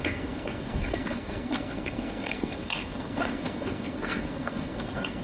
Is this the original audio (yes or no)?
no